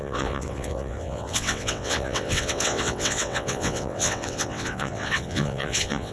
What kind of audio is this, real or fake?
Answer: fake